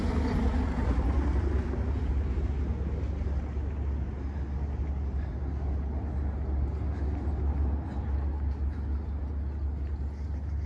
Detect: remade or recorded recorded